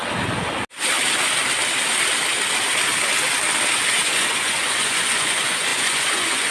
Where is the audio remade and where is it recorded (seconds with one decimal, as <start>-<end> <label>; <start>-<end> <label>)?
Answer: 0.0-3.9 recorded; 3.9-6.5 remade